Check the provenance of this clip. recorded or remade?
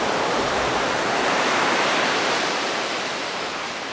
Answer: remade